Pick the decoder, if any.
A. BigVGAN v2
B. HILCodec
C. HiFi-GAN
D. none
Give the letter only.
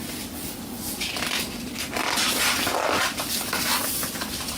D